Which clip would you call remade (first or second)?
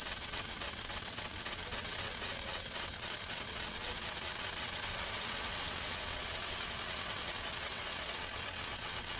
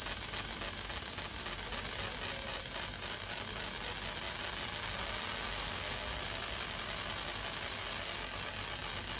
first